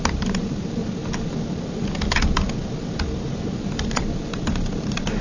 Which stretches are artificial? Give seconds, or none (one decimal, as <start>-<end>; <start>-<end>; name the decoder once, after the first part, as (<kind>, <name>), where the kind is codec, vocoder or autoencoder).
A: 0.0-0.8 (vocoder, BigVGAN v2); 3.9-5.2